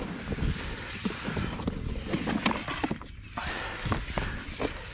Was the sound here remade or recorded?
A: recorded